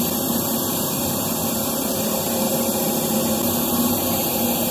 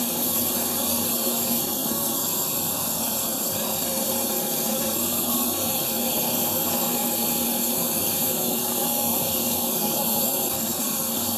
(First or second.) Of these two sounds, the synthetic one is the second